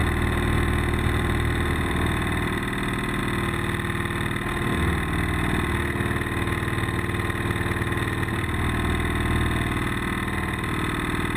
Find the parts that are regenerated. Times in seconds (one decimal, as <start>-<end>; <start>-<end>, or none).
0.0-3.2